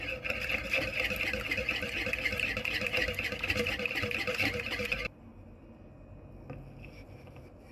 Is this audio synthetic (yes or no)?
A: no